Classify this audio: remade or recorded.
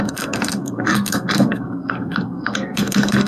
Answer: remade